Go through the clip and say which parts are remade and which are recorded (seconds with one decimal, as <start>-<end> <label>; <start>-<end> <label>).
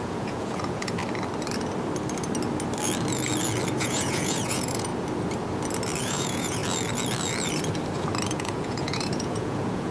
0.0-1.0 remade; 1.0-3.7 recorded; 3.7-4.9 remade; 4.9-6.0 recorded; 6.0-6.6 remade; 6.6-8.3 recorded; 8.3-9.9 remade